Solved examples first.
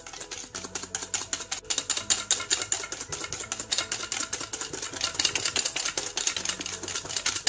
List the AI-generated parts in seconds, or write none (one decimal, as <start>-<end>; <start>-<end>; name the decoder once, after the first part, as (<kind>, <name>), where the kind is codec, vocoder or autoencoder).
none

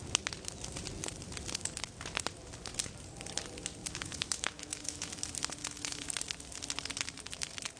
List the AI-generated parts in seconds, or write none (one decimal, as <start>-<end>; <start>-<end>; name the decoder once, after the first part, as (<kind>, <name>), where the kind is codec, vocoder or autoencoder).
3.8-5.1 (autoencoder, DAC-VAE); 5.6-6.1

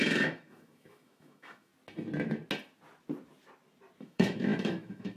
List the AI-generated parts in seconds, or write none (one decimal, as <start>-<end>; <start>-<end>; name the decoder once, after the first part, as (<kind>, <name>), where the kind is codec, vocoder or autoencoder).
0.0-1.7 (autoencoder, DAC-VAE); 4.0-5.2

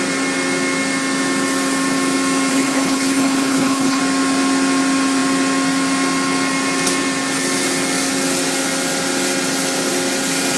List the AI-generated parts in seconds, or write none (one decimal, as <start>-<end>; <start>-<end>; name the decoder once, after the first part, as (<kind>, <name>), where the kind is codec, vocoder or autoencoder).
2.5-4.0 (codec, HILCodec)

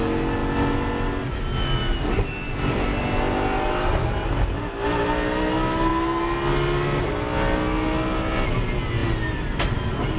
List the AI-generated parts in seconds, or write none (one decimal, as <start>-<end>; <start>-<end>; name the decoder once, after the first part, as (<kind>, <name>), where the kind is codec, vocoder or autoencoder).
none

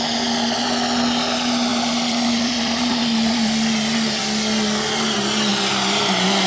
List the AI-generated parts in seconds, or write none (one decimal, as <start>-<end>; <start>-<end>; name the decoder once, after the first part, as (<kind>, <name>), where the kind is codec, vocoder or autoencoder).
1.7-4.2 (vocoder, BigVGAN v2); 5.5-6.5

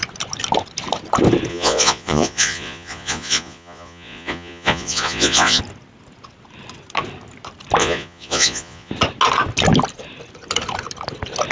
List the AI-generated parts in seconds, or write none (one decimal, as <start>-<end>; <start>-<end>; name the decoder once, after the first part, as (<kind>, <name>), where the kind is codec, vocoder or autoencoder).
1.5-5.6 (vocoder, Vocos); 7.8-8.9